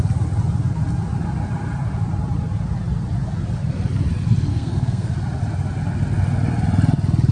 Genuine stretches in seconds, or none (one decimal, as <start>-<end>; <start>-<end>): 0.0-4.5; 5.1-7.3